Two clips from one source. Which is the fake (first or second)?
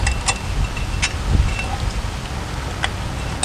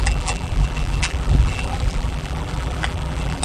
second